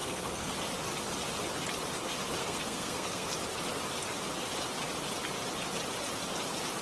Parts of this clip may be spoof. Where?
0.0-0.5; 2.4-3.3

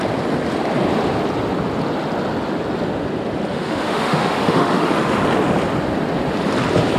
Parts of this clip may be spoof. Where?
3.5-4.9

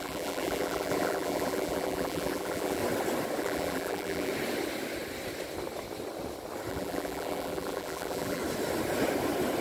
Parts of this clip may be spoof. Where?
0.0-2.8; 3.4-4.3; 6.7-8.4

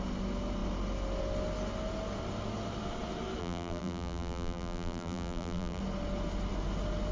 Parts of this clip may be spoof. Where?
3.4-5.8

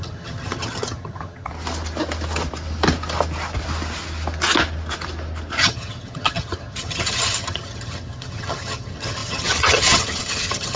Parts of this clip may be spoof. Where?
0.0-1.5; 5.6-10.8

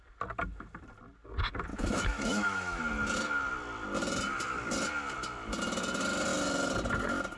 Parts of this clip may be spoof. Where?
1.7-2.8

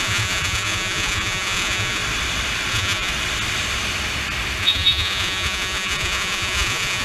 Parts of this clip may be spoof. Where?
0.0-2.0; 2.7-3.1; 4.6-7.0

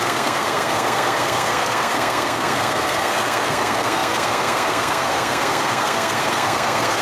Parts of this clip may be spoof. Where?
0.0-7.0